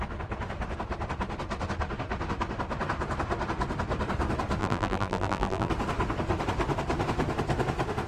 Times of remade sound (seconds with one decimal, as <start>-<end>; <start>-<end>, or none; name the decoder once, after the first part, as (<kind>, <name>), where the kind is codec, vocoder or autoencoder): 4.6-5.7 (vocoder, BigVGAN v2)